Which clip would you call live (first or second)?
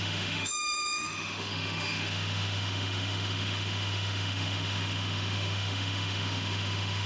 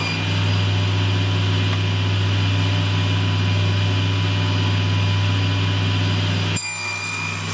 second